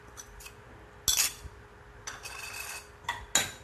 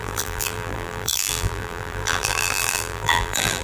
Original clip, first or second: first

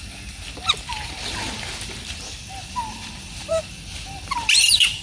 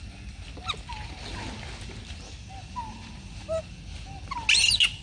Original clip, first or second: second